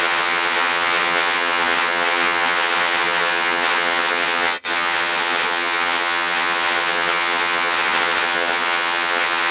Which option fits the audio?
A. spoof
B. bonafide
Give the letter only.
A